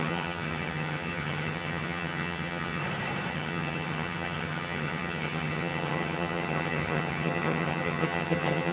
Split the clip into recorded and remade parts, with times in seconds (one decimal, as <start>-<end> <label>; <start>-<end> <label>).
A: 0.0-2.8 remade; 2.8-3.3 recorded; 3.3-8.7 remade